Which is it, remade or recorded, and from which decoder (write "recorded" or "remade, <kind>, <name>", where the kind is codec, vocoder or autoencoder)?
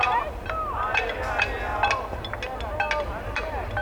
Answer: recorded